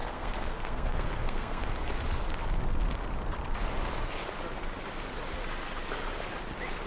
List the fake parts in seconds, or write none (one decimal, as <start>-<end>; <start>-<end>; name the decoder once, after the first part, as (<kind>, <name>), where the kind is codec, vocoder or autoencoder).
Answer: 0.0-1.7 (codec, SNAC)